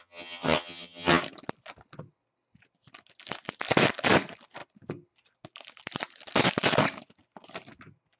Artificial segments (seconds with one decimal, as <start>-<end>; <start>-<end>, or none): 0.0-1.2